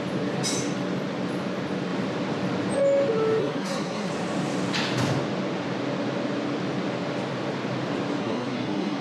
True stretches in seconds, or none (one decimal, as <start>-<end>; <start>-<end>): 0.0-3.4; 4.1-8.2